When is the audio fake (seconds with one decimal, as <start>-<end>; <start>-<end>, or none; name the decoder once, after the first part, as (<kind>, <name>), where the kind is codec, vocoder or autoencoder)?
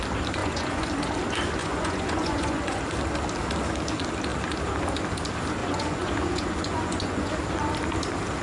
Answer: 0.4-0.9 (vocoder, Vocos); 1.6-2.8; 5.6-7.3